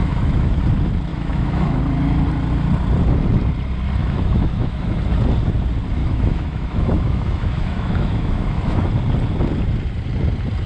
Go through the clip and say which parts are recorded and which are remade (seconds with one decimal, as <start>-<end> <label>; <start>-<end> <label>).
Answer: 0.0-0.6 remade; 0.6-1.1 recorded; 1.1-1.8 remade; 1.8-4.0 recorded; 4.0-5.0 remade; 5.0-6.0 recorded; 6.0-8.9 remade; 8.9-10.7 recorded